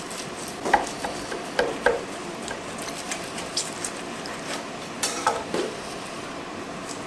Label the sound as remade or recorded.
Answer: remade